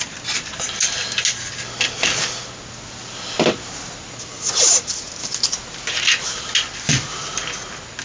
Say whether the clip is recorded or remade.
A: recorded